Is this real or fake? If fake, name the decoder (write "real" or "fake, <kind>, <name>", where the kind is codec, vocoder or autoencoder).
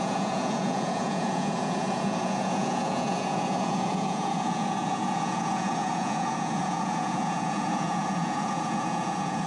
fake, vocoder, Vocos